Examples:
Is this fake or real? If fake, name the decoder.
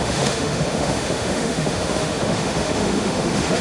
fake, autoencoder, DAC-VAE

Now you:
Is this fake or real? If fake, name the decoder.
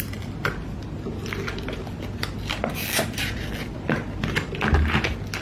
real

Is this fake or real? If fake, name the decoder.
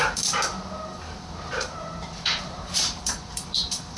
fake, vocoder, BigVGAN v2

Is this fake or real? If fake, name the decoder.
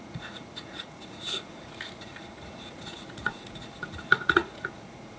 fake, vocoder, Vocos